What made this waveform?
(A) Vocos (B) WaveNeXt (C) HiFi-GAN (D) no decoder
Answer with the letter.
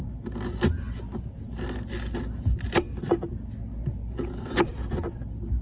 D